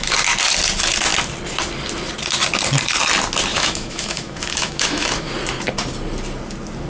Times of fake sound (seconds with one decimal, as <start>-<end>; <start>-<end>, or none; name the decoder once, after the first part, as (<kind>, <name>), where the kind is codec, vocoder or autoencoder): 3.5-5.3 (autoencoder, DAC-VAE)